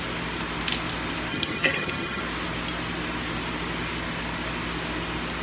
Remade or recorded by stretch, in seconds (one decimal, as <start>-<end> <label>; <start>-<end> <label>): 0.0-1.3 recorded; 1.3-2.2 remade; 2.2-5.4 recorded